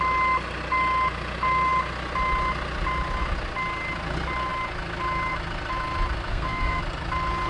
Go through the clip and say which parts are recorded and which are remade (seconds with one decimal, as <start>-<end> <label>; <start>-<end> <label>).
0.0-6.3 recorded; 6.3-6.8 remade; 6.8-7.5 recorded